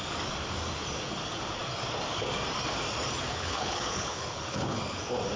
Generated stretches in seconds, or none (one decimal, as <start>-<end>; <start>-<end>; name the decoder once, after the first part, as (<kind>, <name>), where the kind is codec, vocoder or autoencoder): 3.3-4.8 (codec, HILCodec)